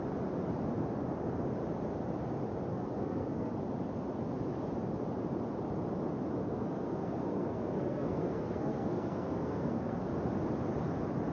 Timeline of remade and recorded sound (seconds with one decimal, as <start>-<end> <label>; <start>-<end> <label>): 0.0-2.7 recorded; 2.7-3.5 remade; 3.5-6.4 recorded; 6.4-10.1 remade; 10.1-11.3 recorded